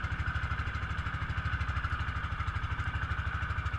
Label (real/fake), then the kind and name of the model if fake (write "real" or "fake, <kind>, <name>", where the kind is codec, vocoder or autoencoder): real